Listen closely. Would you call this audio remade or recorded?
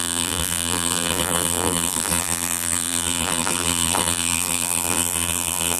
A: remade